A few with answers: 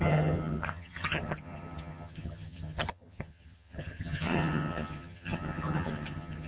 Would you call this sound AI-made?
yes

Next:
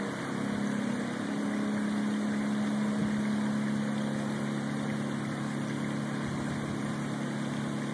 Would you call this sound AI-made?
no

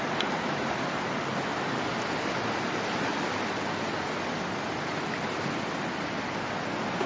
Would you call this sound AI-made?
no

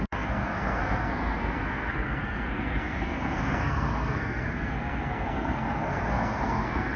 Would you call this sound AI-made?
yes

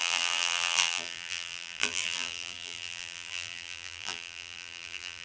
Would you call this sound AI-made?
yes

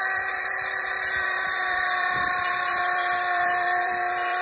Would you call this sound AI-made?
yes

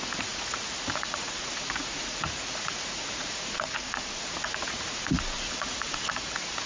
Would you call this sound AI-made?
yes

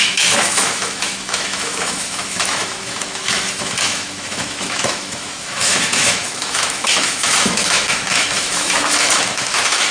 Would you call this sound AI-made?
yes